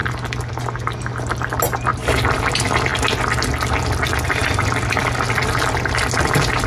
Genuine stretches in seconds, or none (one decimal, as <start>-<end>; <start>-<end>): 0.0-6.7